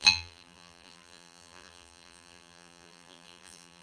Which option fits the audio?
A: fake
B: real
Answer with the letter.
A